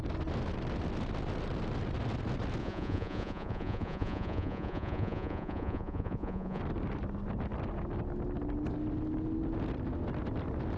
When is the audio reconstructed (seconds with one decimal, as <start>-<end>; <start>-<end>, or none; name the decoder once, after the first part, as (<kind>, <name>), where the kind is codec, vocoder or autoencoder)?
2.6-6.6 (vocoder, Vocos)